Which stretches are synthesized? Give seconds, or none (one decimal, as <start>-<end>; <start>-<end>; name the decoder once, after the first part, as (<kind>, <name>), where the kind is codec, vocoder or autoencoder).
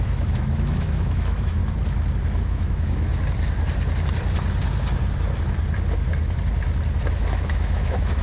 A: 0.0-1.6 (autoencoder, DAC-VAE); 2.4-3.1; 7.1-8.2